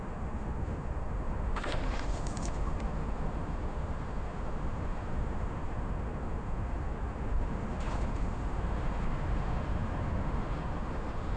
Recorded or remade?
remade